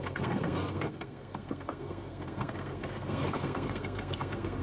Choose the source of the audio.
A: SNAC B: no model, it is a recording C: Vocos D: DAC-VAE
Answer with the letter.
A